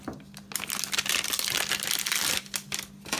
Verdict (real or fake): real